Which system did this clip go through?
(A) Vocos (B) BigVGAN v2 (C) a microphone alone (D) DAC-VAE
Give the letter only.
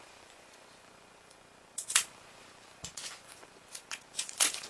A